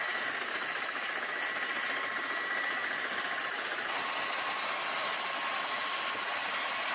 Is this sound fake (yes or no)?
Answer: no